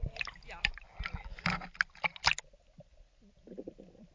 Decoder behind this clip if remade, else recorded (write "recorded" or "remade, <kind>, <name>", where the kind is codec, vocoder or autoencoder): recorded